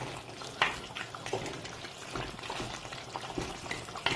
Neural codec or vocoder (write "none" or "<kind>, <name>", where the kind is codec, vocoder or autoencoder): none